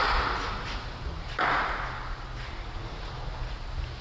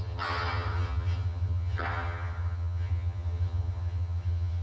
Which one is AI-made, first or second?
second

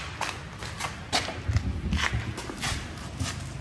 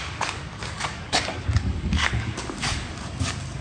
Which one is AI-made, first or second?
second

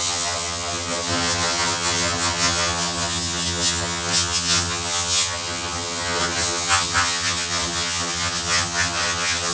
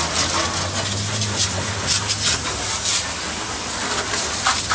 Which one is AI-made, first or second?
first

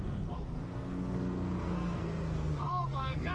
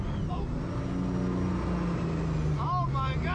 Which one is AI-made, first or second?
first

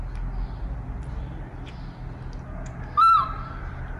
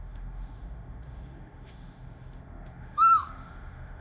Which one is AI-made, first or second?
second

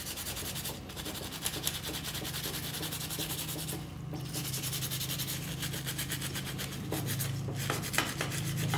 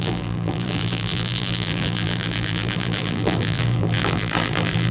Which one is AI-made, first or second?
second